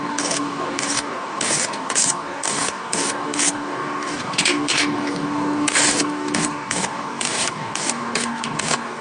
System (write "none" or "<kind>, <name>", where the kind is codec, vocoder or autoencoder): codec, DAC